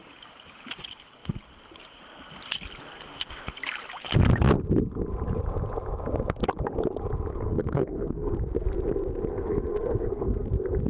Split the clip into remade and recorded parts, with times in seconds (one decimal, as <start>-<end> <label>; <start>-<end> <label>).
0.0-7.3 recorded; 7.3-8.4 remade; 8.4-9.3 recorded; 9.3-10.5 remade; 10.5-10.9 recorded